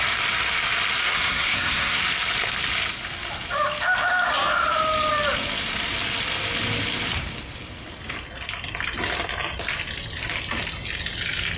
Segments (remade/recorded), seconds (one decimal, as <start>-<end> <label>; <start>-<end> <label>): 0.0-1.0 recorded; 1.0-2.0 remade; 2.0-11.6 recorded